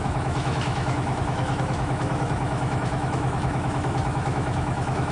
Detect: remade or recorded remade